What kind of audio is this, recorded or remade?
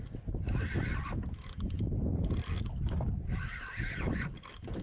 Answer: recorded